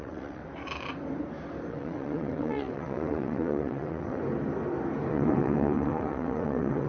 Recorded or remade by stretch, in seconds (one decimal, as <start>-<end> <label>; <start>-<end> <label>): 0.0-0.4 remade; 0.4-1.7 recorded; 1.7-4.2 remade; 4.2-5.1 recorded; 5.1-6.9 remade